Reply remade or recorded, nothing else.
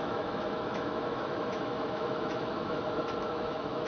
remade